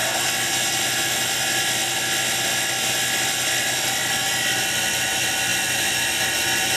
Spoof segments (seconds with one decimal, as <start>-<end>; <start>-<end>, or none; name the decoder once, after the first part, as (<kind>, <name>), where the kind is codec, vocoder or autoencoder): none